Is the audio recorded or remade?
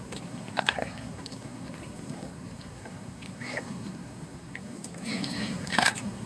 remade